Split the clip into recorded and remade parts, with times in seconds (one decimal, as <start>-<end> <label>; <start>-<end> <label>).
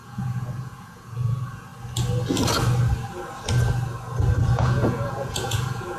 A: 0.0-1.7 remade; 1.7-4.5 recorded; 4.5-6.0 remade